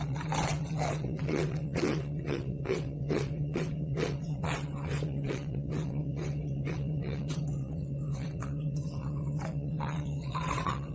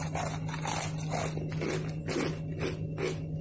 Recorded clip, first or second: second